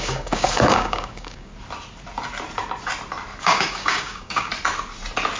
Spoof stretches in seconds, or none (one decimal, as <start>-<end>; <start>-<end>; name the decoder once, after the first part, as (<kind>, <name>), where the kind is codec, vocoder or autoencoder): 0.0-1.5 (codec, DAC); 3.4-4.5